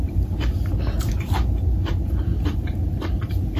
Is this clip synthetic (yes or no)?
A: no